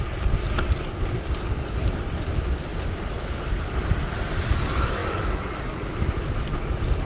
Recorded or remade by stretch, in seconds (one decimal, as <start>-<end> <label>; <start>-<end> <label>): 0.0-7.0 recorded